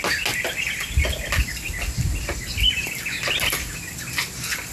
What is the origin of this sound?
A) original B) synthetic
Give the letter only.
A